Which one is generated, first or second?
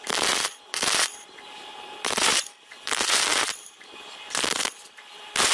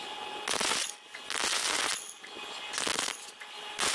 first